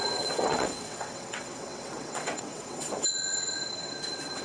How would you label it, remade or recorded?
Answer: remade